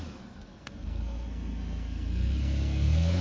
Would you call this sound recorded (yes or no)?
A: no